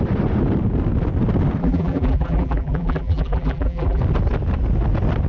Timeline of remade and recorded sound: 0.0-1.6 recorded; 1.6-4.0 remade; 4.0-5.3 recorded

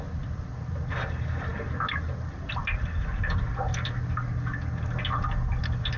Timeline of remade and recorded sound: 0.0-6.0 recorded

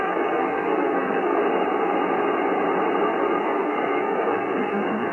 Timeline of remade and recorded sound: 0.0-1.4 remade; 1.4-3.4 recorded; 3.4-5.1 remade

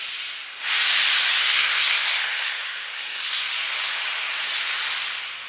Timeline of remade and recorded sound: 0.0-1.3 recorded; 1.3-3.5 remade; 3.5-5.5 recorded

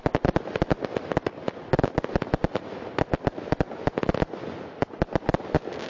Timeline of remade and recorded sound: 0.0-5.9 recorded

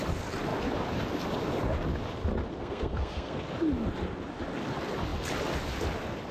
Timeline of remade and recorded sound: 0.0-2.6 recorded; 2.6-3.4 remade; 3.4-6.3 recorded

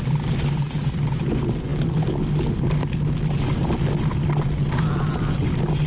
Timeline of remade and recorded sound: 0.0-5.9 recorded

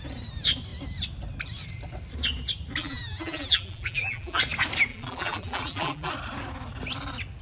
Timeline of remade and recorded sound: 0.0-2.8 recorded; 2.8-4.4 remade; 4.4-4.9 recorded; 4.9-6.1 remade; 6.1-7.4 recorded